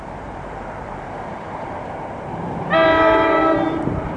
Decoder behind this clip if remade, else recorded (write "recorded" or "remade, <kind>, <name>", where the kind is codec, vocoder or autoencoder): remade, vocoder, BigVGAN v2